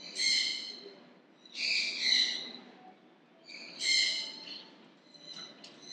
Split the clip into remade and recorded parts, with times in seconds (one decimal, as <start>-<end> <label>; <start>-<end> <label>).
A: 0.0-5.9 recorded